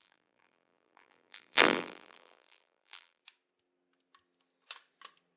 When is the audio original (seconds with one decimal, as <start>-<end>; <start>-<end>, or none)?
3.2-5.4